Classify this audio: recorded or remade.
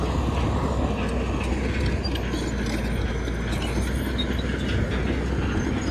recorded